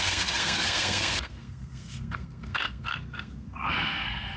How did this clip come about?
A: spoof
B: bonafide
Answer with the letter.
A